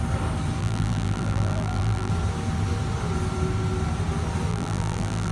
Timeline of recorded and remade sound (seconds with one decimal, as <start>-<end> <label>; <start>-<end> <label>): 0.0-0.6 recorded; 0.6-2.1 remade; 2.1-4.5 recorded; 4.5-5.3 remade